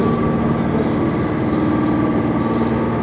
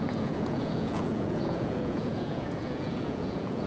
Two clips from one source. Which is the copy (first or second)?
second